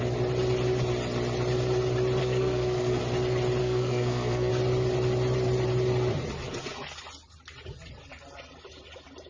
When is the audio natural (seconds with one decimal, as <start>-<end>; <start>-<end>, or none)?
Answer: 0.0-2.2; 3.0-3.6; 4.5-9.3